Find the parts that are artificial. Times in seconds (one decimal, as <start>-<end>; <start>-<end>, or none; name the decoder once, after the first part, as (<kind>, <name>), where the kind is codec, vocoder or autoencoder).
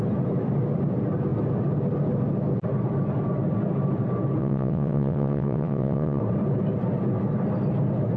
4.4-6.2 (vocoder, WaveNeXt)